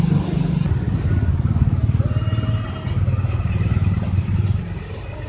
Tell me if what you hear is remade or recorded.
recorded